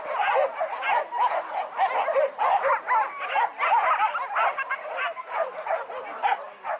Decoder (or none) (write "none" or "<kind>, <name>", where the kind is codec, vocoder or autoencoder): none